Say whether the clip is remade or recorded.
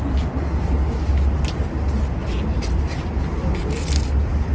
recorded